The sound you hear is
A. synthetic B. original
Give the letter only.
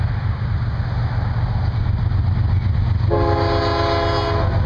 B